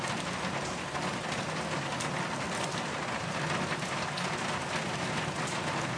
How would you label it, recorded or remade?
recorded